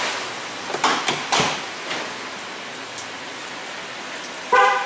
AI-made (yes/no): yes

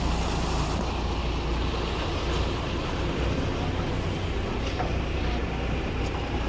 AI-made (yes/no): no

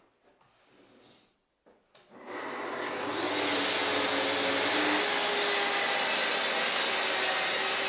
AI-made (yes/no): no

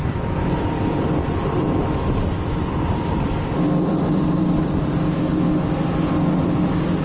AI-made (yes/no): yes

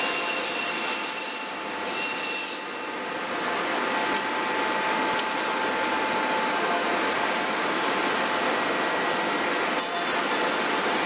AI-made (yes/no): no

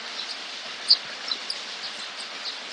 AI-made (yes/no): no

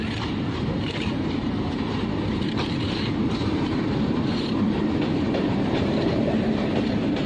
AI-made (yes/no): yes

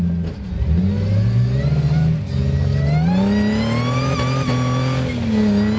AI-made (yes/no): no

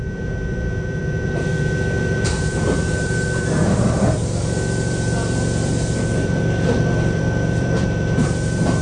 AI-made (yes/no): yes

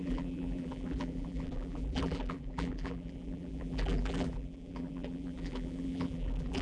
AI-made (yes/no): yes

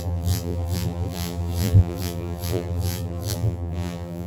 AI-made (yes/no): yes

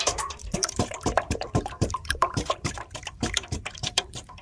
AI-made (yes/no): yes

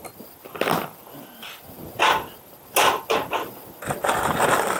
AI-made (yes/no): no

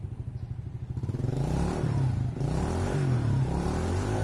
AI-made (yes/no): yes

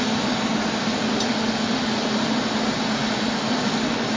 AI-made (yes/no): no